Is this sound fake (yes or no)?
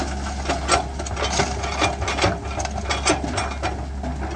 no